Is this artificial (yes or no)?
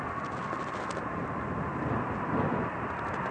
no